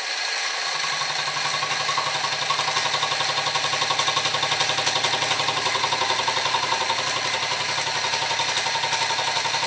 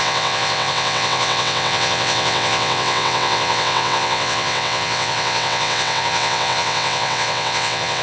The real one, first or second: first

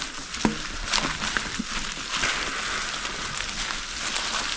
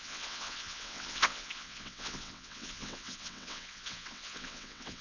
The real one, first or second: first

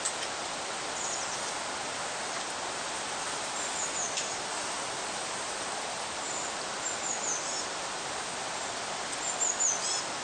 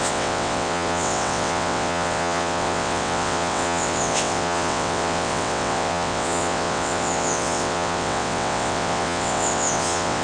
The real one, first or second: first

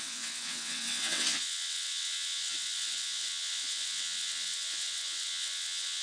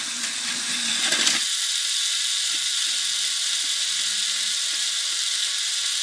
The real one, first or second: second